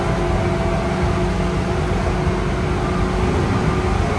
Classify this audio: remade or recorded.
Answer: recorded